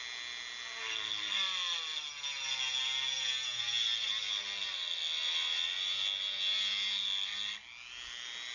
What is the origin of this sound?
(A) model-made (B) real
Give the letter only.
B